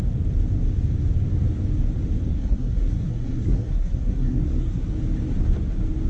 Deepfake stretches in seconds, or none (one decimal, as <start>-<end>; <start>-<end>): 2.3-4.9